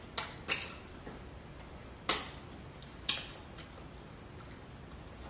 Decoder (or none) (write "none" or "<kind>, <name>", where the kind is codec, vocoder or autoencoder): none